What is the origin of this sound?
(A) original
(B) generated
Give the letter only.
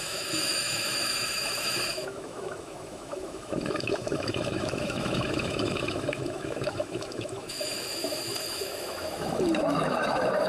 B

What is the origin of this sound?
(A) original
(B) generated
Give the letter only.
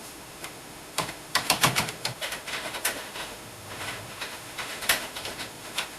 B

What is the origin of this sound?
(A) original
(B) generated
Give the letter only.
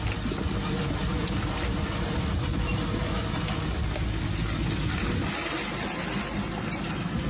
A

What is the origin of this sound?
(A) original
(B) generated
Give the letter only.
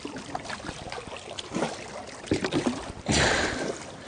A